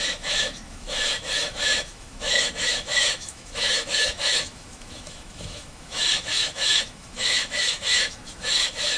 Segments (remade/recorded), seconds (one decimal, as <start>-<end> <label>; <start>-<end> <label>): 0.0-9.0 remade